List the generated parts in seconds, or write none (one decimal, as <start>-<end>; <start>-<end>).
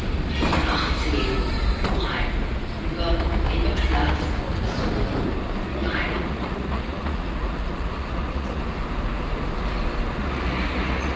5.7-8.6; 10.2-11.2